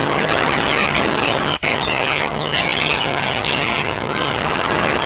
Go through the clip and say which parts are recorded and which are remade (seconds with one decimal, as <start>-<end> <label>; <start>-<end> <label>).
0.0-5.1 remade

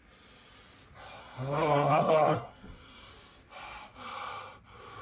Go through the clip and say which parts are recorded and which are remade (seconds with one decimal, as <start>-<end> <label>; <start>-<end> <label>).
0.0-1.2 recorded; 1.2-3.1 remade; 3.1-5.0 recorded